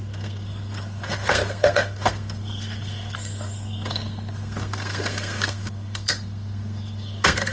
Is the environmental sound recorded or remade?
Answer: remade